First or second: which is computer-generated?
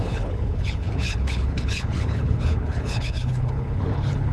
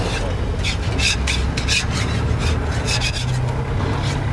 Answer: first